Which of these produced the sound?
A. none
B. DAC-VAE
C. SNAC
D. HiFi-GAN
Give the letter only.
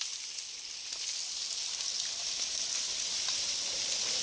A